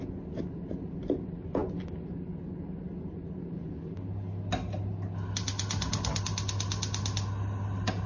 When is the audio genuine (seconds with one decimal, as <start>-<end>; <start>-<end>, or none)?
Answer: 0.0-8.1